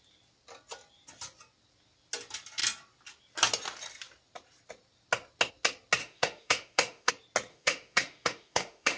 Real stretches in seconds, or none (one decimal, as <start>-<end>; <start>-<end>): 0.0-6.0; 7.1-7.5